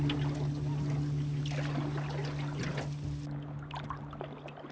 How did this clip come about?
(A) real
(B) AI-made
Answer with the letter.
A